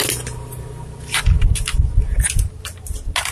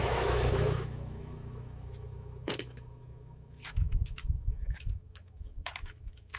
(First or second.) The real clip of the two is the first